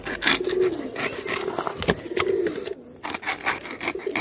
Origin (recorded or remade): recorded